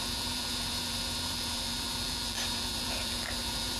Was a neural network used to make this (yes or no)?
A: yes